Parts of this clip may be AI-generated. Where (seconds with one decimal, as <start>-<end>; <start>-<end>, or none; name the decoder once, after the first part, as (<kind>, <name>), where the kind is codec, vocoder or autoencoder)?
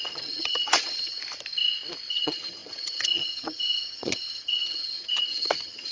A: 0.0-1.2 (vocoder, HiFi-GAN); 2.1-5.9